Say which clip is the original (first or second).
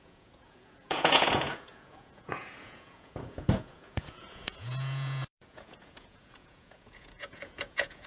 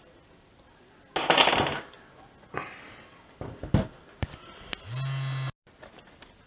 second